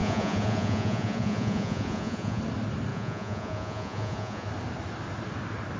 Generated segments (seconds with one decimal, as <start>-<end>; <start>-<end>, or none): 0.0-2.4; 2.9-4.5